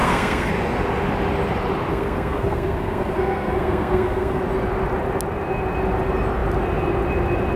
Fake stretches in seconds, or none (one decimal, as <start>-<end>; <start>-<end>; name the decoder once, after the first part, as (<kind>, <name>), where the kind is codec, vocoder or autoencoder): 0.0-0.5 (codec, SNAC); 1.9-4.4